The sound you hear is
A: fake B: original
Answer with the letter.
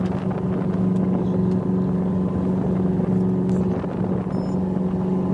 B